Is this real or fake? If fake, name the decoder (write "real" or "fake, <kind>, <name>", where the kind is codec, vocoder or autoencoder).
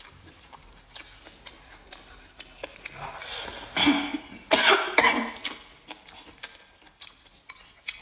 real